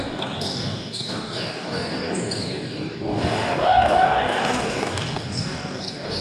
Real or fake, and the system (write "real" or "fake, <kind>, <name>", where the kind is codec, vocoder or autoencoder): fake, codec, DAC